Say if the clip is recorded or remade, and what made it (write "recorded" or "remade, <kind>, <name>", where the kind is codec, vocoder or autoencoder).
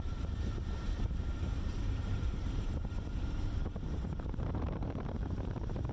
remade, vocoder, BigVGAN v2